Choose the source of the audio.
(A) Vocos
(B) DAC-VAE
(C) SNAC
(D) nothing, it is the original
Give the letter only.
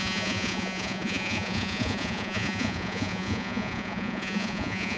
A